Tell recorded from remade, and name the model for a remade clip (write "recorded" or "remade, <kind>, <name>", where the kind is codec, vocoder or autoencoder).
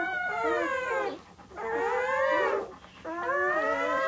recorded